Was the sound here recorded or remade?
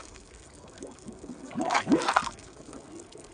remade